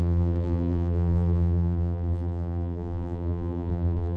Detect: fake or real fake